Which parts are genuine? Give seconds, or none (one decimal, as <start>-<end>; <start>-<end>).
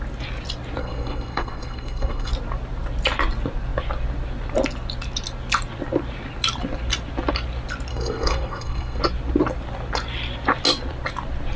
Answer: 0.0-0.8; 2.3-7.9; 9.0-11.6